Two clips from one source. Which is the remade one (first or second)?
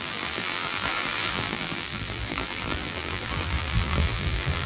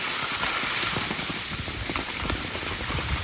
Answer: first